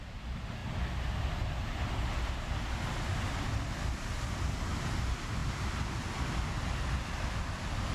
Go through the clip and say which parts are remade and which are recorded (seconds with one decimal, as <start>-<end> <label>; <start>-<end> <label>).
0.0-7.9 recorded